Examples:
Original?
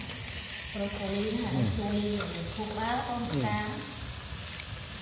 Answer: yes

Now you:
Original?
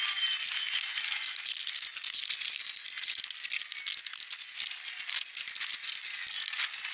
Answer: yes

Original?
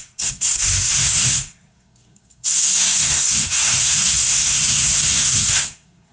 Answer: no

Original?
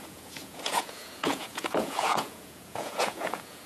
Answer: no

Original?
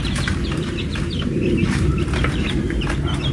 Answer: no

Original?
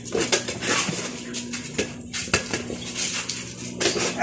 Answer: yes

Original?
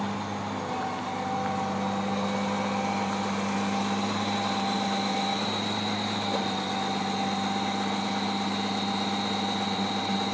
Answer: yes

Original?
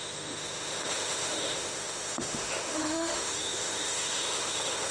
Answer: no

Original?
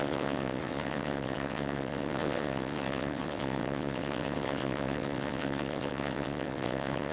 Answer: no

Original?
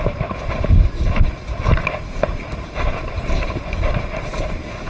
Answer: yes